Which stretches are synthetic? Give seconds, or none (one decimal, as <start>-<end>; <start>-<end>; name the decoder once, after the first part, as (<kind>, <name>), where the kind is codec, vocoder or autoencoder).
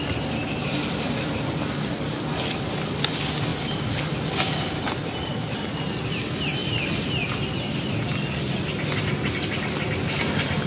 6.6-7.5 (vocoder, BigVGAN v2)